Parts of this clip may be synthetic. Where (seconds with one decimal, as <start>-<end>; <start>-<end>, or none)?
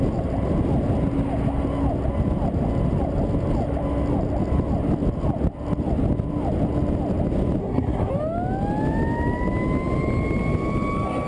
7.6-8.1